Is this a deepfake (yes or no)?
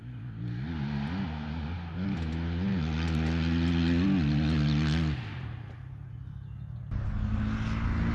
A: no